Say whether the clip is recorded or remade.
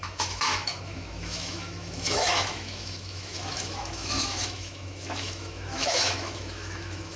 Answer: remade